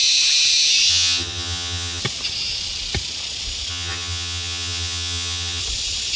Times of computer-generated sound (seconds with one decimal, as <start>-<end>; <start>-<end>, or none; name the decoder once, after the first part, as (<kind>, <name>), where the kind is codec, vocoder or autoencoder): 0.9-2.0 (vocoder, HiFi-GAN); 3.7-5.6